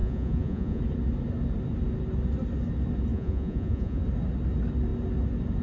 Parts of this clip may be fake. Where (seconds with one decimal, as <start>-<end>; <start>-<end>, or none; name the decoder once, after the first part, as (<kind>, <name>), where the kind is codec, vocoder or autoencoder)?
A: 0.0-0.8 (vocoder, Vocos); 3.1-4.0